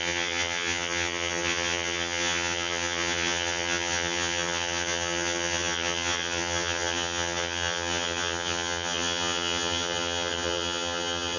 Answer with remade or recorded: remade